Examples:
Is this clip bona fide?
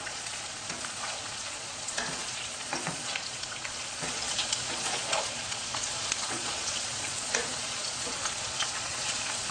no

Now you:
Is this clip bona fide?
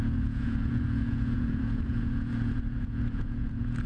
no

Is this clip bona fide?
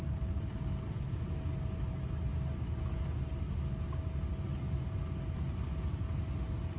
yes